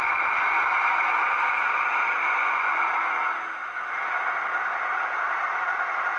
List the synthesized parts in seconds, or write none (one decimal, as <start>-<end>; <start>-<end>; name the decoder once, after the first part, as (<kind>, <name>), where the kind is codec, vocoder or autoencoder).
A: 2.2-2.8 (vocoder, Vocos)